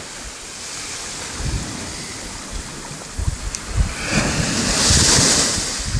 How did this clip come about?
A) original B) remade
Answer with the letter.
A